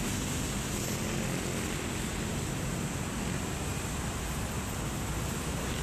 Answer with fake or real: real